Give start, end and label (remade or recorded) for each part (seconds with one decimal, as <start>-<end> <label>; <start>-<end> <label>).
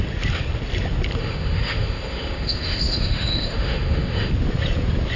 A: 0.0-1.2 recorded; 1.2-4.3 remade; 4.3-5.2 recorded